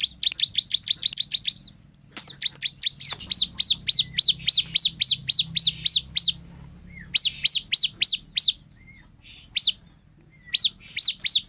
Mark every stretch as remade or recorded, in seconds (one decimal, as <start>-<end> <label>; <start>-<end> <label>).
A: 0.0-11.5 recorded